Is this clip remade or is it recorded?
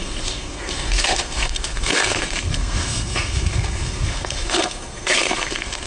remade